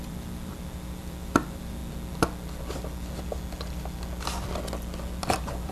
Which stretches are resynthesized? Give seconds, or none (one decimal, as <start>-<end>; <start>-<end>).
0.0-1.8; 5.2-5.7